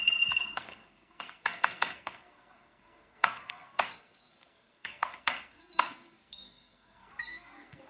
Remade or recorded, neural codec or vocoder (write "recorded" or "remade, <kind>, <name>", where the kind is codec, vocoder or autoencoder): remade, codec, SNAC